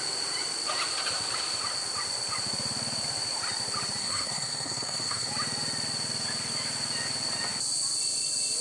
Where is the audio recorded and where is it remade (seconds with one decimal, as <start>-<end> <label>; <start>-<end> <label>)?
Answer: 0.0-4.0 recorded; 4.0-5.3 remade; 5.3-8.6 recorded